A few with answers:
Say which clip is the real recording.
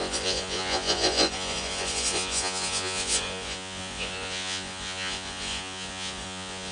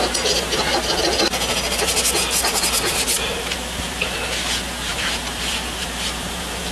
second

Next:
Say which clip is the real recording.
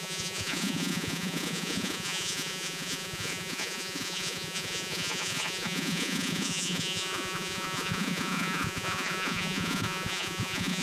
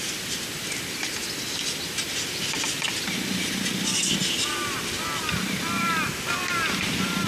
second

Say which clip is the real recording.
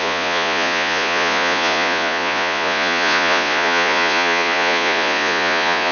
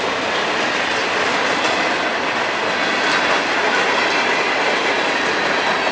second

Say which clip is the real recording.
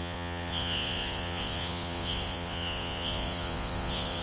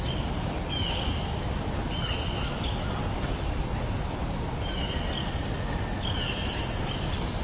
second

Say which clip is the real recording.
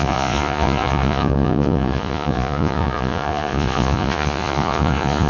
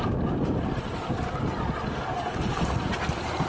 second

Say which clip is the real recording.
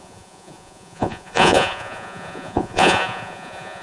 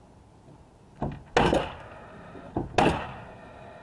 second